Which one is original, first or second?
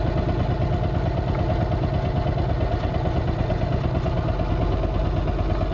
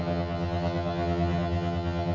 first